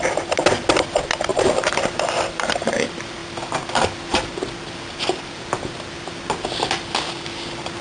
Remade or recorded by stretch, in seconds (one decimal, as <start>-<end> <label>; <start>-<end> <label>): 0.0-1.3 recorded; 1.3-2.8 remade; 2.8-7.8 recorded